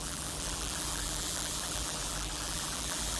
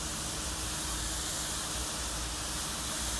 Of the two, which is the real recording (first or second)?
second